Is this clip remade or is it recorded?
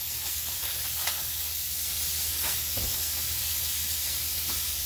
remade